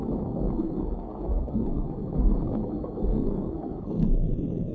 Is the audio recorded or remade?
remade